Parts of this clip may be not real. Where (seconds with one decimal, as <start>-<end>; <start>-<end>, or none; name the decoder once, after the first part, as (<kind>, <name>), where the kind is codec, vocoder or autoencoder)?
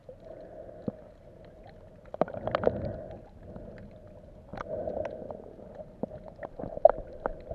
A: none